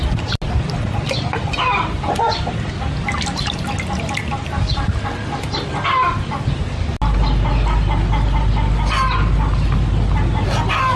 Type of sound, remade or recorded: recorded